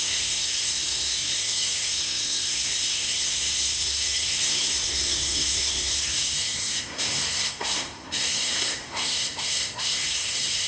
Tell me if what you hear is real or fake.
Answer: fake